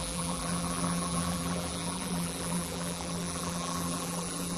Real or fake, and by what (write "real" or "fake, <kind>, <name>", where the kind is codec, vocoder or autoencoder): fake, vocoder, BigVGAN v2